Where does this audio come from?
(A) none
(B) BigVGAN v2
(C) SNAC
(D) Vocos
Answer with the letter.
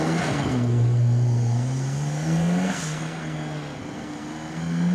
C